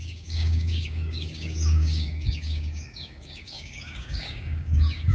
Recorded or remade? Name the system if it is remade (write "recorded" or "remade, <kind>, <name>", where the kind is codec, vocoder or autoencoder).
remade, codec, DAC